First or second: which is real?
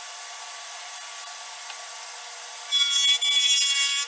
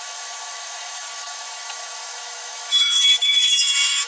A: first